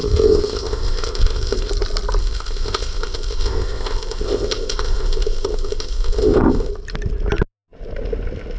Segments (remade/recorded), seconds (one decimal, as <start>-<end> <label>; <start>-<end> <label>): 0.0-1.7 remade; 1.7-2.2 recorded; 2.2-6.7 remade; 6.7-8.6 recorded